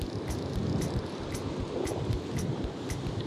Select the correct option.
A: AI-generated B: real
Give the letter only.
B